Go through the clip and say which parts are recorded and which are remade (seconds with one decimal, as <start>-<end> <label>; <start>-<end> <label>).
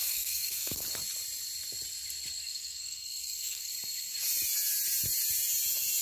0.0-0.9 remade; 0.9-2.4 recorded; 2.4-3.7 remade; 3.7-6.0 recorded